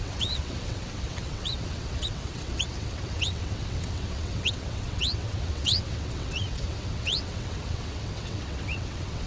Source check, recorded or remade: remade